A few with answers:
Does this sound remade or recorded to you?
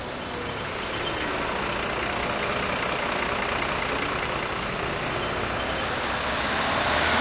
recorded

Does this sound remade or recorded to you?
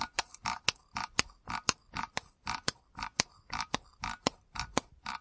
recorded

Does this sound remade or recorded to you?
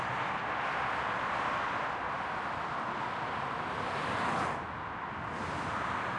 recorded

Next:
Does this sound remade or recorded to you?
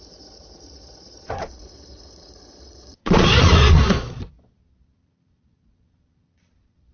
remade